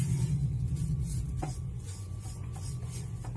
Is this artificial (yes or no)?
yes